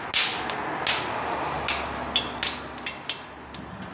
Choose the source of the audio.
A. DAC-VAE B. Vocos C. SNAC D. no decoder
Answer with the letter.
D